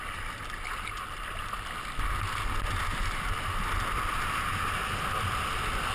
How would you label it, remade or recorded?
recorded